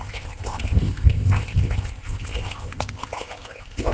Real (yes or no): no